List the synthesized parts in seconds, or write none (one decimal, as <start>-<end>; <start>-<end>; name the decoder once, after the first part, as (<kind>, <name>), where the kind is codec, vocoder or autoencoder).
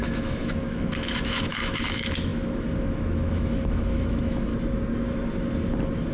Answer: 0.0-4.5 (autoencoder, DAC-VAE)